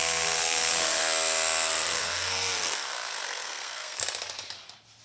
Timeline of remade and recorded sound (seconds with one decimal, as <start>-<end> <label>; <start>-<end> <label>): 0.0-1.0 remade; 1.0-1.9 recorded; 1.9-4.0 remade; 4.0-5.0 recorded